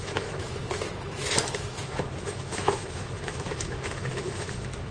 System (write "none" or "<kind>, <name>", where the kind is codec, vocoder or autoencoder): autoencoder, DAC-VAE